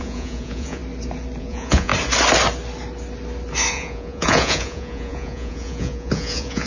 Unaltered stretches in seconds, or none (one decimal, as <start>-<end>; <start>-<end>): 0.8-1.4; 1.9-3.7